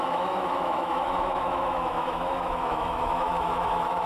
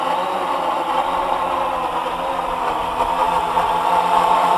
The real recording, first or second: second